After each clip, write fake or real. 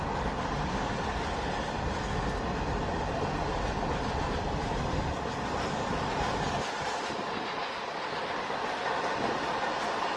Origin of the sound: real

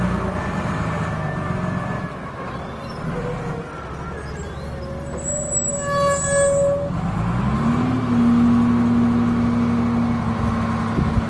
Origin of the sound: real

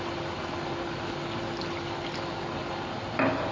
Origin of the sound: real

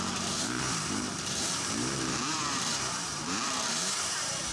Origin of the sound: fake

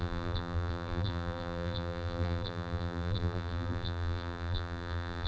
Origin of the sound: fake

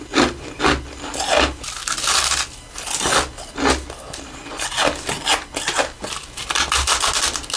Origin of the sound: real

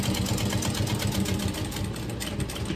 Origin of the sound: real